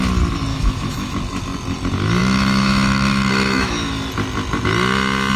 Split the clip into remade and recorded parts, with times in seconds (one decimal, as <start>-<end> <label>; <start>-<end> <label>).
0.0-0.5 recorded; 0.5-1.1 remade; 1.1-2.2 recorded; 2.2-3.9 remade; 3.9-5.4 recorded